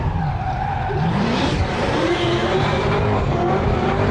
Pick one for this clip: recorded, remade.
remade